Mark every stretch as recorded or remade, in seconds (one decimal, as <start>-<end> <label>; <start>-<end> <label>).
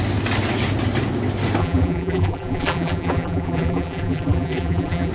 0.0-1.6 recorded; 1.6-5.1 remade